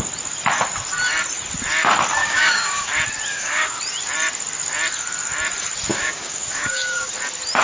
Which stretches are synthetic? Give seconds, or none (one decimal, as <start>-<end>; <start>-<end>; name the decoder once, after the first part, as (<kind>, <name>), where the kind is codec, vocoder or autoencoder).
2.2-2.9 (codec, DAC); 3.3-3.8; 5.9-7.1

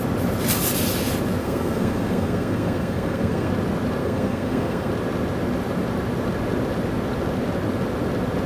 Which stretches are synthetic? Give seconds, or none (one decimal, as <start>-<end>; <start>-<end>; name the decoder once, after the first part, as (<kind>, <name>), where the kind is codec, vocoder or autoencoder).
1.4-3.5 (codec, SNAC); 4.0-4.9

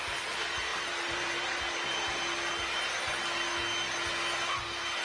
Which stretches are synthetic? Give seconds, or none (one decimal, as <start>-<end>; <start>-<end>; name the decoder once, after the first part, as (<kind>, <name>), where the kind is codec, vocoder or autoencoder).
0.7-2.0 (vocoder, BigVGAN v2)

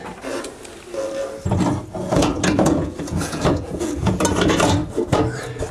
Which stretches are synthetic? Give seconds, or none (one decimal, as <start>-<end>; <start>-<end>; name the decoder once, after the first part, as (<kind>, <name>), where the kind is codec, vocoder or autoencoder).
2.0-4.2 (vocoder, Vocos)

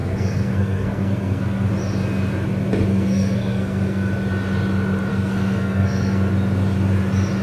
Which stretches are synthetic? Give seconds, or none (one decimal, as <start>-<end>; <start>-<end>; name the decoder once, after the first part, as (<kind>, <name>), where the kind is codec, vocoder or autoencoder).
0.0-1.7 (codec, SNAC); 2.9-4.1; 5.1-6.3

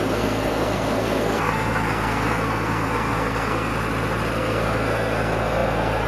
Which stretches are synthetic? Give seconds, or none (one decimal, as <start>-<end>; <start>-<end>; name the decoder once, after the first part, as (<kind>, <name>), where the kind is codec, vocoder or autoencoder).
0.0-3.7 (codec, SNAC); 4.3-6.1